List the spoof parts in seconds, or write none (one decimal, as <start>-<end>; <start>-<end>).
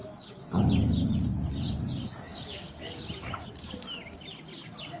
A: 2.3-3.0